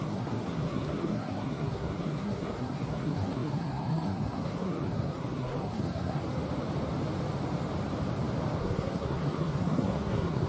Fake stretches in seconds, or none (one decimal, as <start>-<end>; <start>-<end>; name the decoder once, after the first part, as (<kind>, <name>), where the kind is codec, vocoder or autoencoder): 0.0-6.2 (codec, SNAC); 8.6-10.5